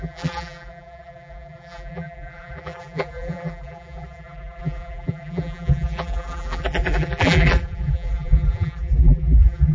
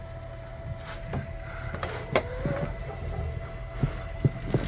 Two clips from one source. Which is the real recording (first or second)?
second